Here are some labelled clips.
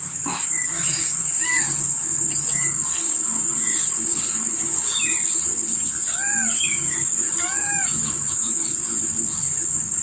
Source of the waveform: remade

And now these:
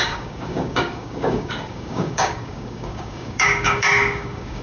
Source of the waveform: remade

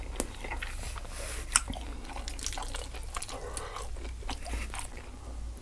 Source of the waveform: recorded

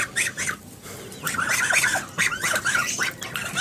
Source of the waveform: recorded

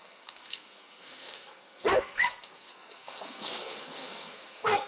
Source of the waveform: remade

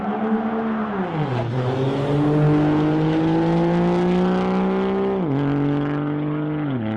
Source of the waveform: recorded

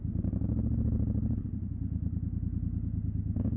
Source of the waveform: recorded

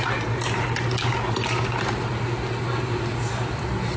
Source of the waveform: recorded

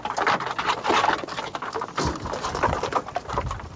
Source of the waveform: recorded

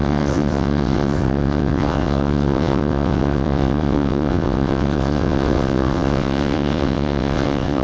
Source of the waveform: remade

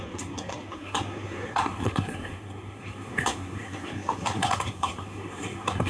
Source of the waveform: remade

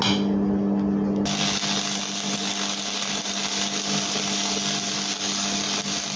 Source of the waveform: recorded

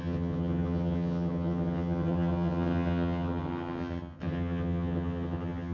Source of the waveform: remade